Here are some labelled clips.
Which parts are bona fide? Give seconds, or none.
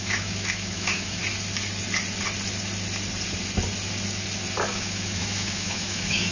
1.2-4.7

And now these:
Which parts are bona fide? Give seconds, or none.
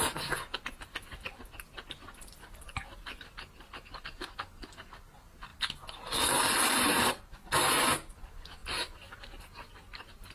0.0-10.3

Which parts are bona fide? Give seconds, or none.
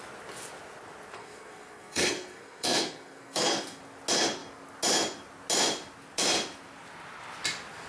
0.0-1.2; 3.8-7.9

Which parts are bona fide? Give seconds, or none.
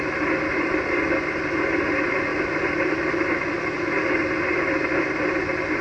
0.0-5.8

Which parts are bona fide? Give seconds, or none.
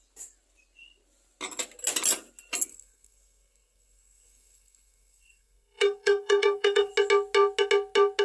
0.0-2.7; 6.9-8.2